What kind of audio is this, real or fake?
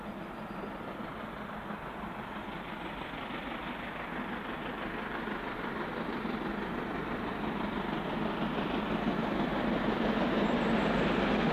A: real